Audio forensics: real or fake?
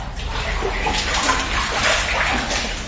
real